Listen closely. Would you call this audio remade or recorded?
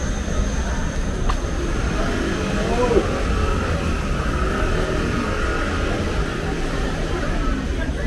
recorded